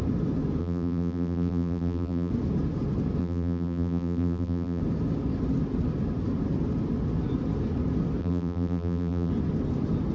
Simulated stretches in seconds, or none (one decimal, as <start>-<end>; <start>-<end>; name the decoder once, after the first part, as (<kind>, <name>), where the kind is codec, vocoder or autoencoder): 0.6-2.3 (vocoder, BigVGAN v2); 3.2-4.8; 8.2-9.3